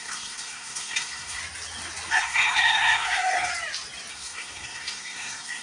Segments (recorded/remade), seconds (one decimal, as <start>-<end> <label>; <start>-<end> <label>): 0.0-1.4 remade; 1.4-2.1 recorded; 2.1-3.5 remade; 3.5-4.1 recorded; 4.1-5.6 remade